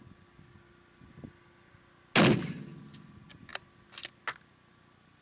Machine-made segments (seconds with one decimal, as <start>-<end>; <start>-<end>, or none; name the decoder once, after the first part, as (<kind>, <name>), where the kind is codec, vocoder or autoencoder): none